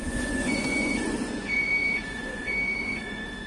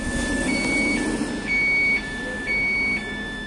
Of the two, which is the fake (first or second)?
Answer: first